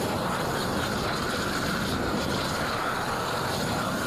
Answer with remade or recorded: recorded